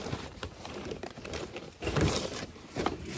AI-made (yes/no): yes